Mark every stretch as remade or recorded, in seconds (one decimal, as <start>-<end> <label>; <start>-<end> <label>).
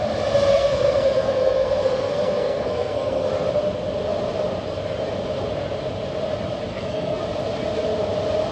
0.0-0.5 recorded; 0.5-3.3 remade; 3.3-6.7 recorded; 6.7-7.2 remade; 7.2-8.5 recorded